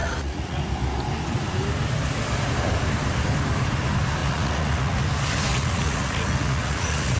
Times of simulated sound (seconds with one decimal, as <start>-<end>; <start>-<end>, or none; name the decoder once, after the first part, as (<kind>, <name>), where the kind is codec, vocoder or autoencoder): 0.0-0.6 (vocoder, Vocos); 4.2-5.0; 5.5-7.2